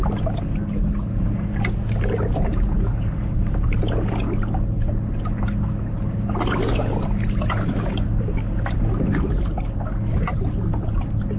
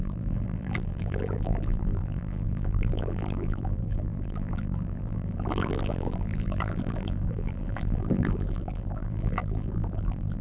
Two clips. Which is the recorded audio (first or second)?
first